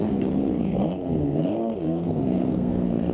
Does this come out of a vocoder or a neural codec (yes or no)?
yes